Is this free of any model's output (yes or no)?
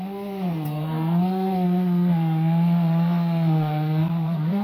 no